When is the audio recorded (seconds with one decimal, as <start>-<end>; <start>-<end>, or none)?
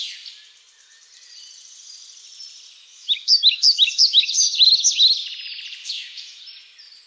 0.0-2.8; 4.9-5.8; 6.4-7.1